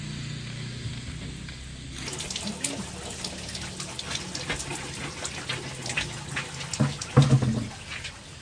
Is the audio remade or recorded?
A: recorded